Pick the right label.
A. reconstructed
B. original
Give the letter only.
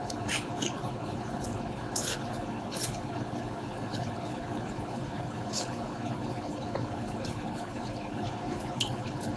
A